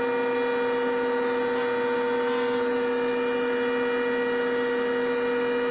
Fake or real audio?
real